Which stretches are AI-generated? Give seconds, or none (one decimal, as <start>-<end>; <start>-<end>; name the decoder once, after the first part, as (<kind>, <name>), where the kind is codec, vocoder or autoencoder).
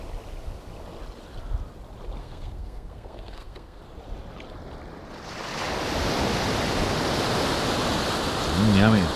2.2-3.8 (codec, SNAC)